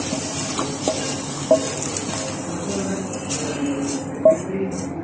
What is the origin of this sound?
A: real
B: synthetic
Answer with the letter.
A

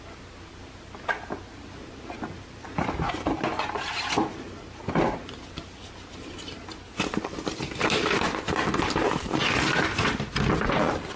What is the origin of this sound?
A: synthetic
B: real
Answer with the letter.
B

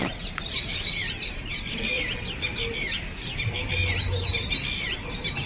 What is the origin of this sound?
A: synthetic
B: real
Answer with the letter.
B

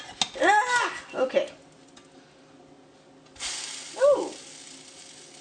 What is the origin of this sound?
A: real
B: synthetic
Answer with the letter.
A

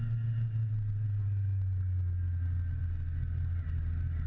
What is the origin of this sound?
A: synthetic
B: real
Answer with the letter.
B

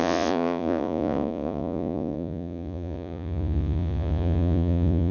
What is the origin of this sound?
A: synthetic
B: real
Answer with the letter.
A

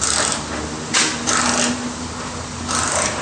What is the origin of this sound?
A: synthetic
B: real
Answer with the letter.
B